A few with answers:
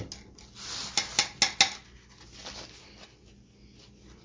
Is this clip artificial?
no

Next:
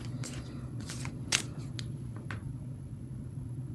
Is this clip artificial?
yes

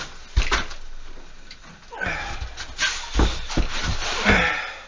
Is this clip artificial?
no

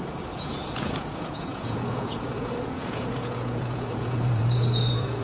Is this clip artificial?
yes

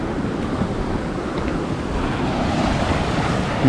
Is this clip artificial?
no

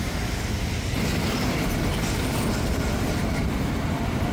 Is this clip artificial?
no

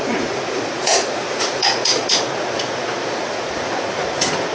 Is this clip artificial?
yes